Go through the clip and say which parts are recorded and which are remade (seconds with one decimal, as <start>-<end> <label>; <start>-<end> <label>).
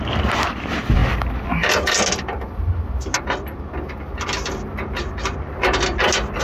0.0-6.4 recorded